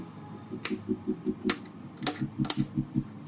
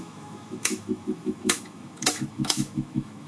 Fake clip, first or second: second